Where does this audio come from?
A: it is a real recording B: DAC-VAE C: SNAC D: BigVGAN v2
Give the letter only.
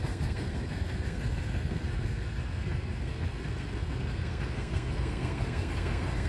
C